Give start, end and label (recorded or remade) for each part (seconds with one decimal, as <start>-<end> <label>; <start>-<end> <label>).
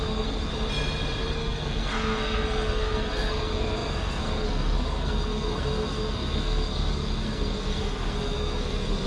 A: 0.0-0.5 remade; 0.5-1.3 recorded; 1.3-9.1 remade